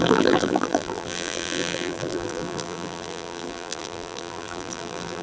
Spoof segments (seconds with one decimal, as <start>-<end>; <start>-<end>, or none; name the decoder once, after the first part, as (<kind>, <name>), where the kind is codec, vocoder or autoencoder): 0.0-5.2 (vocoder, BigVGAN v2)